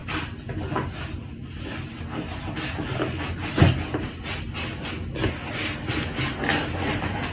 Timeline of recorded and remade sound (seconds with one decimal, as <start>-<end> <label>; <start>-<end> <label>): 0.0-7.3 recorded